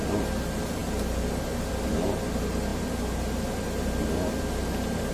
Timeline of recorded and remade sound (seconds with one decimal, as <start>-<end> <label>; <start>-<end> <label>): 0.0-5.1 recorded